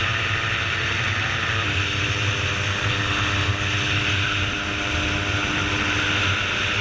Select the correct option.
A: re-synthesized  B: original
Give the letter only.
B